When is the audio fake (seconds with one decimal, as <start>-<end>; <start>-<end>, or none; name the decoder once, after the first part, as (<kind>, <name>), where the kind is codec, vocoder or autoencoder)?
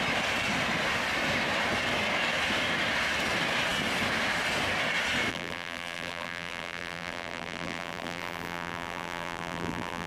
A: 5.3-10.1 (vocoder, BigVGAN v2)